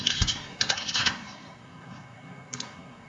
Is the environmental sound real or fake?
fake